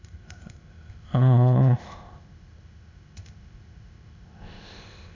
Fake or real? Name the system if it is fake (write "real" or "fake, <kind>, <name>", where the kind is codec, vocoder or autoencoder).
fake, codec, ZipCodec